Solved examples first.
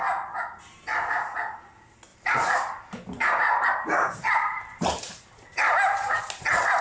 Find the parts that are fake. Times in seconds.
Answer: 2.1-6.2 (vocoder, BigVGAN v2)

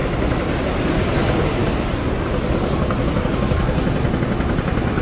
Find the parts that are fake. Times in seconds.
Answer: none

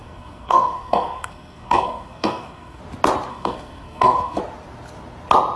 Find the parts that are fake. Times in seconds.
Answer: 0.0-2.8 (codec, SNAC); 3.3-4.4

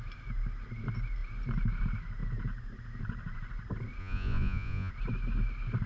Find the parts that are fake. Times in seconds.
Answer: 4.0-4.9 (vocoder, Vocos)

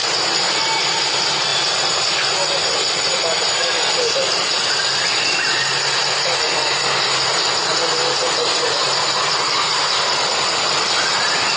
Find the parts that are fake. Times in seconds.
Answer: none